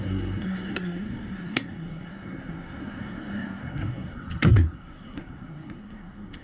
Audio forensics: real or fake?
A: fake